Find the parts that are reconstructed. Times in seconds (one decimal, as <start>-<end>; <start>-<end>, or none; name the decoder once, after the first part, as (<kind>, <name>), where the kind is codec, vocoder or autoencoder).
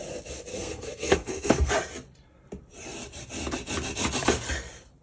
0.5-1.7 (codec, SNAC)